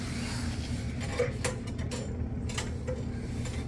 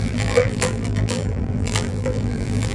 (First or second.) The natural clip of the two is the first